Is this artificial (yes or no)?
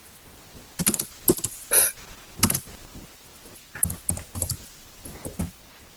no